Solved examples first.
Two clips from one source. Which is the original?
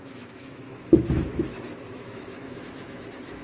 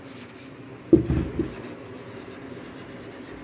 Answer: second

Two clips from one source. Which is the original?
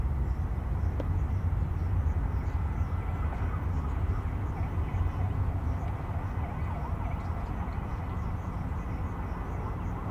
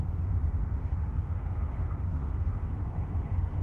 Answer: first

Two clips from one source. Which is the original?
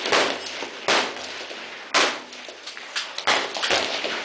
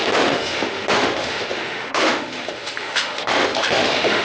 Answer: first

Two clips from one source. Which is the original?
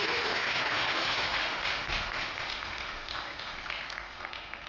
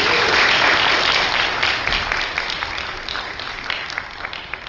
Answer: second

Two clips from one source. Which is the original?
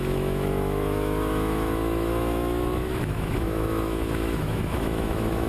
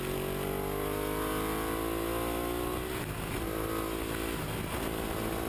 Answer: second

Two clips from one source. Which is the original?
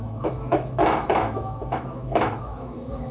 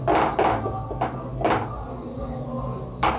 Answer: second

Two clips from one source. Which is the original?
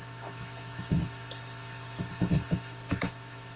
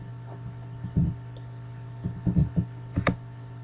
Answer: second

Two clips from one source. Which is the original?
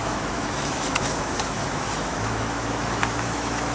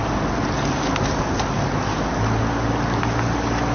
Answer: second